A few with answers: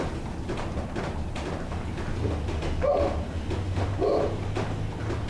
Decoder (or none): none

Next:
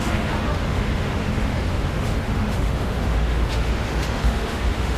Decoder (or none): autoencoder, DAC-VAE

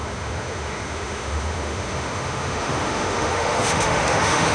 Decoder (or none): autoencoder, DAC-VAE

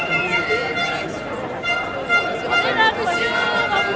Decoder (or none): none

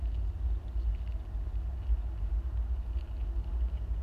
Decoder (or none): none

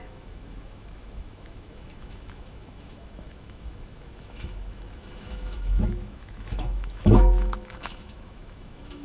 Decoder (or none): autoencoder, DAC-VAE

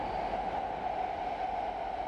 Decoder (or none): none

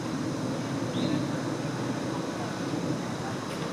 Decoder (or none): none